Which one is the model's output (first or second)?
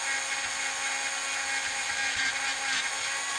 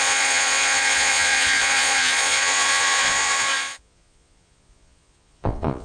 second